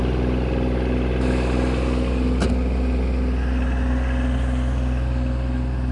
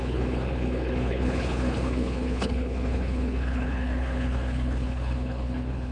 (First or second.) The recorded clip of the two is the first